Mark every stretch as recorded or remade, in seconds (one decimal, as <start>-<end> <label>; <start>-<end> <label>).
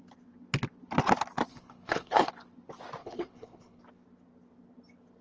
0.0-1.5 recorded; 1.5-2.3 remade; 2.3-3.0 recorded; 3.0-3.8 remade; 3.8-5.2 recorded